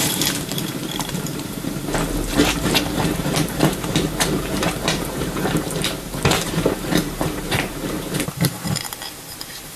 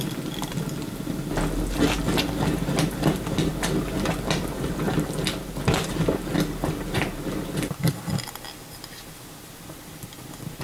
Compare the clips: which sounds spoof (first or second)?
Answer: first